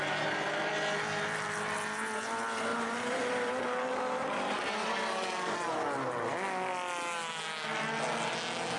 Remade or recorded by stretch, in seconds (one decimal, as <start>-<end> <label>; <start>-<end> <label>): 0.0-2.7 recorded; 2.7-5.7 remade; 5.7-8.8 recorded